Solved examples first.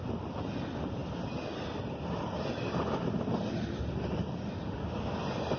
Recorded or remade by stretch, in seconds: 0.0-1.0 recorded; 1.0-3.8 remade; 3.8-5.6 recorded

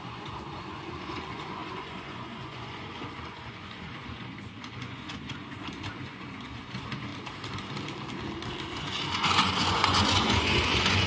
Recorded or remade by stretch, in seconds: 0.0-7.1 remade; 7.1-8.8 recorded; 8.8-11.1 remade

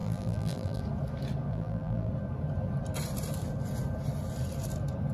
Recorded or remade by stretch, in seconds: 0.0-0.8 remade; 0.8-1.5 recorded; 1.5-2.1 remade; 2.1-5.1 recorded

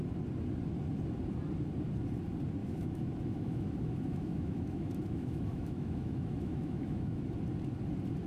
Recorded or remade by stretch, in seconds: 0.0-2.6 recorded; 2.6-7.2 remade; 7.2-8.3 recorded

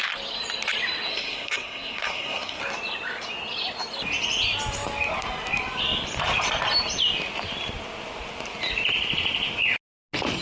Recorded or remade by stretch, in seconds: 0.0-1.1 recorded; 1.1-2.6 remade; 2.6-10.4 recorded

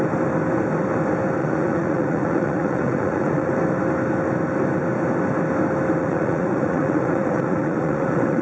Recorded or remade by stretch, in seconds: 0.0-1.4 recorded; 1.4-3.5 remade; 3.5-6.0 recorded; 6.0-8.4 remade

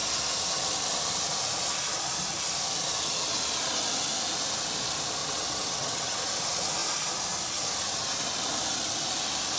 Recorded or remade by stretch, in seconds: 0.0-5.2 recorded; 5.2-6.2 remade; 6.2-9.6 recorded